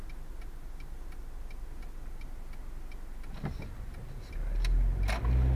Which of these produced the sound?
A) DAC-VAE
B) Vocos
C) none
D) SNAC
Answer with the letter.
C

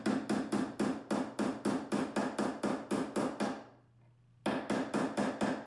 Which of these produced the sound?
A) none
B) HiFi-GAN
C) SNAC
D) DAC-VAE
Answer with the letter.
A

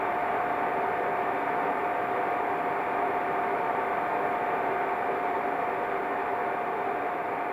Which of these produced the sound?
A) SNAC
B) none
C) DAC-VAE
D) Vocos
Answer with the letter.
B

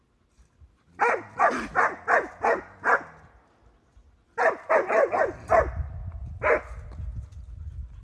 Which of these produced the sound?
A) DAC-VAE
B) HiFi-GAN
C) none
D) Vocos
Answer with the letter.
C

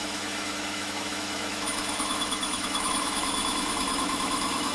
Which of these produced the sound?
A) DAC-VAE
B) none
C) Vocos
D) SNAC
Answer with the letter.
A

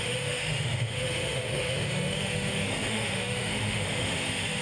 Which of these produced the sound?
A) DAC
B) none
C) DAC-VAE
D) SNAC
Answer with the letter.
C